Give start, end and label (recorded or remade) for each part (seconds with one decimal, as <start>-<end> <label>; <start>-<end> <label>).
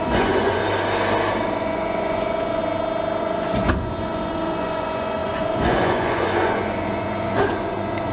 0.0-0.6 remade; 0.6-1.6 recorded; 1.6-2.6 remade; 2.6-3.2 recorded; 3.2-8.1 remade